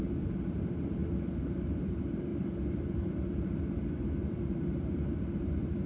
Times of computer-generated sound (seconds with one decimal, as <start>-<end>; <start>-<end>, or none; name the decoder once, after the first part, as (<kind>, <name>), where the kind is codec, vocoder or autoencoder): 0.0-5.9 (vocoder, BigVGAN v2)